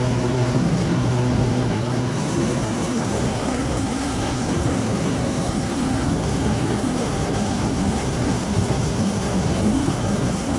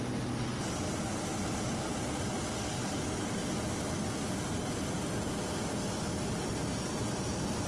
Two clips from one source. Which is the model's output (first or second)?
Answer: first